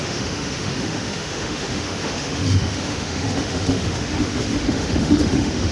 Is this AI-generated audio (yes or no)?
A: yes